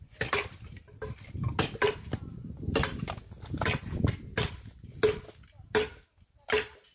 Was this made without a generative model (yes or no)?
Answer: yes